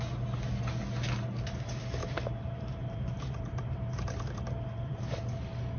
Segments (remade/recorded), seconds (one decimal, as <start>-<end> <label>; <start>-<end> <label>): 0.0-2.0 recorded; 2.0-5.2 remade; 5.2-5.8 recorded